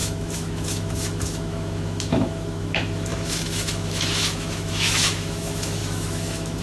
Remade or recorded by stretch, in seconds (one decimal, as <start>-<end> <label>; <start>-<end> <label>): 0.0-6.6 remade